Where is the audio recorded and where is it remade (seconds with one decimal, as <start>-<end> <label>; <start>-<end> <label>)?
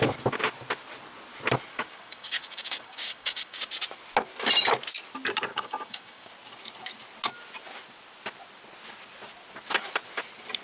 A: 0.0-1.7 recorded; 1.7-3.6 remade; 3.6-5.5 recorded; 5.5-6.3 remade; 6.3-10.6 recorded